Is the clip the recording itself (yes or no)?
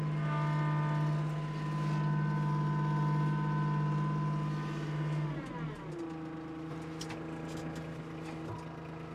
yes